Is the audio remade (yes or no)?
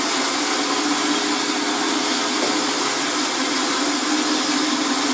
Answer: no